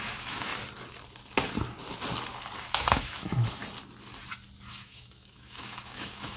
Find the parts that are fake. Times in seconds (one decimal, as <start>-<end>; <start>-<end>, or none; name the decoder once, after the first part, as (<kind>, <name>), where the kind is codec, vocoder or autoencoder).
0.0-0.5 (autoencoder, DAC-VAE); 2.6-3.6; 4.7-6.4